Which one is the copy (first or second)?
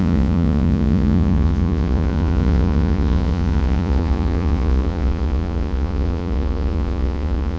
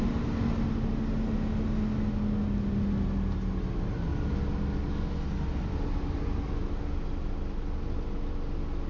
first